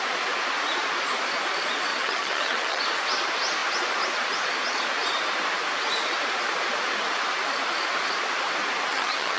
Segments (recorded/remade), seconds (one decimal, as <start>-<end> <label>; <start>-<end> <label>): 0.0-1.9 recorded; 1.9-2.8 remade; 2.8-8.9 recorded; 8.9-9.4 remade